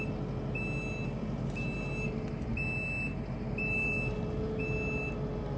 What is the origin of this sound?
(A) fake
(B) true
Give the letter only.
B